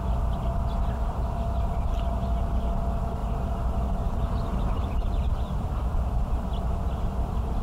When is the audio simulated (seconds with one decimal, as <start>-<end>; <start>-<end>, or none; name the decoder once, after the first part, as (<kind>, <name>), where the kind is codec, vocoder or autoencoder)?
3.2-5.7 (vocoder, BigVGAN v2)